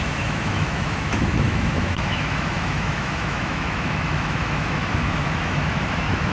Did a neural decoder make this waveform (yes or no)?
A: yes